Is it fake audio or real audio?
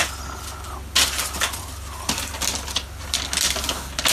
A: real